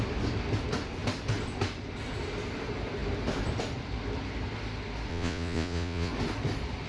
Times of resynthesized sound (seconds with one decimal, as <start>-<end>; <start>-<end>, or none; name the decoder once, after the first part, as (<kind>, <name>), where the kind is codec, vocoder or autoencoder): 5.1-6.1 (vocoder, Vocos)

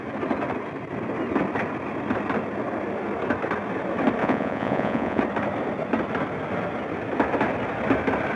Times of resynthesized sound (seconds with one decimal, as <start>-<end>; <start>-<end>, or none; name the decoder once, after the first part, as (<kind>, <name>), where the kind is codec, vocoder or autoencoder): 4.2-5.2 (vocoder, Vocos)

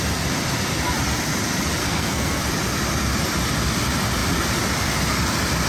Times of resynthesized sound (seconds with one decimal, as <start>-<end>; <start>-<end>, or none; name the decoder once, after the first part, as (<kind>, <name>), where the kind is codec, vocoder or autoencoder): 1.8-2.4 (codec, SNAC)

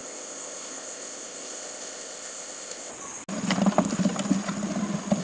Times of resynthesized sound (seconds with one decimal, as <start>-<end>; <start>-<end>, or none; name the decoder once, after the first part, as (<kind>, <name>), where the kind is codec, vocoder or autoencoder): 0.0-2.9 (codec, ZipCodec)

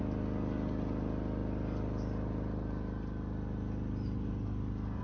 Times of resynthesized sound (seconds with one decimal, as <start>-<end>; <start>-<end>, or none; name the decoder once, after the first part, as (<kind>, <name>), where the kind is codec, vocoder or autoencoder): none